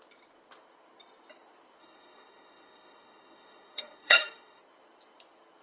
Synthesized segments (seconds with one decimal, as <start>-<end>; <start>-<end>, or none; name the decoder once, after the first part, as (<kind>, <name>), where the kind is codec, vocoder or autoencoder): 1.8-4.6 (autoencoder, DAC-VAE)